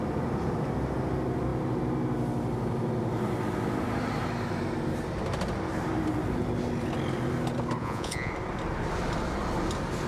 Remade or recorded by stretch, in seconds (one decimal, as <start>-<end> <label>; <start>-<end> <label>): 0.0-7.8 recorded; 7.8-8.3 remade; 8.3-10.1 recorded